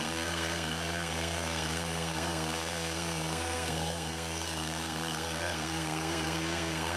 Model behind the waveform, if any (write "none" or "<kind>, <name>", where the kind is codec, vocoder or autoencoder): codec, SNAC